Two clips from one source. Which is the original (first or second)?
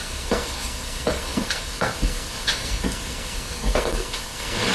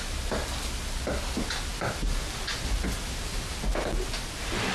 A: second